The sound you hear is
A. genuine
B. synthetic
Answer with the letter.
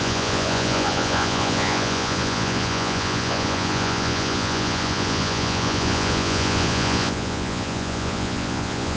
B